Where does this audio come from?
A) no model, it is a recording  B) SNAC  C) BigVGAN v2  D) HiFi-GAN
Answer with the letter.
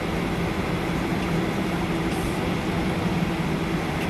A